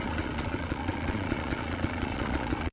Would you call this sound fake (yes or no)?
yes